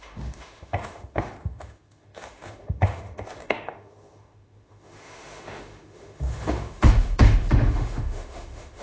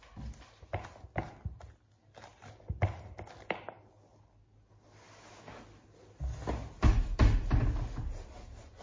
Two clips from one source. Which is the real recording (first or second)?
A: second